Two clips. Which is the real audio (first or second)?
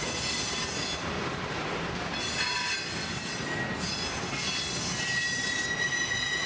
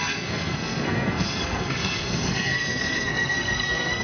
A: first